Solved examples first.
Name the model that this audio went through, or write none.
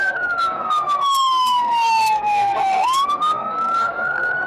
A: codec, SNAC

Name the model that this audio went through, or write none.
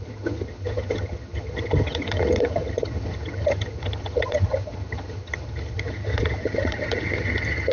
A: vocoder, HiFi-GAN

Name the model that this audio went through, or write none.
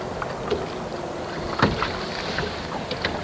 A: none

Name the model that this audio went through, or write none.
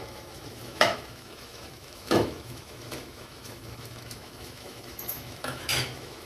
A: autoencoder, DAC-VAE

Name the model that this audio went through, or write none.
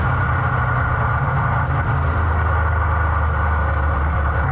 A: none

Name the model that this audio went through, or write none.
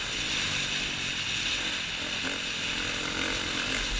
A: none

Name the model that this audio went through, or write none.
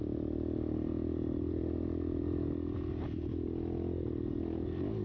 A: none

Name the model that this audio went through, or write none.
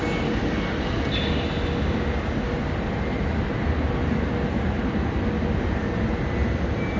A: none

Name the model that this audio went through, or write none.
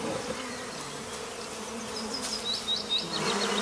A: none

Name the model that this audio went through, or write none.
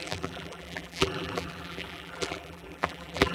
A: vocoder, BigVGAN v2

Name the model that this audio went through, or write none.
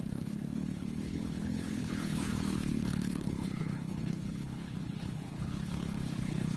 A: codec, HILCodec